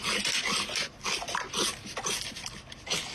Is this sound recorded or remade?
recorded